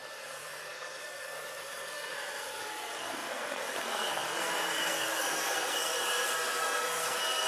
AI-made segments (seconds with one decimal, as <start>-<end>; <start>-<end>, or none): 0.0-7.5